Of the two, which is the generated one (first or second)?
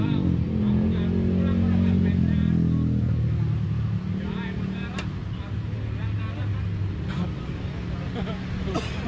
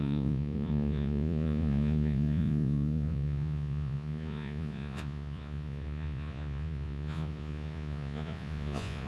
second